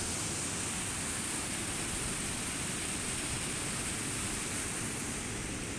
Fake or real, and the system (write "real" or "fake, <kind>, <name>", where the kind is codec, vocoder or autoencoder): real